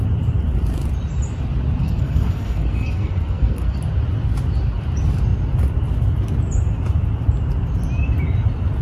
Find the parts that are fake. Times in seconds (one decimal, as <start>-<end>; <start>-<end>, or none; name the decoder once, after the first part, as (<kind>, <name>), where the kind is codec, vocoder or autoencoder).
1.8-3.8 (codec, SNAC)